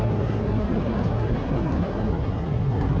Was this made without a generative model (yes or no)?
no